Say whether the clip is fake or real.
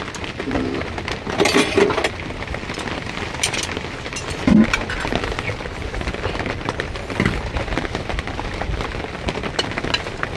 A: real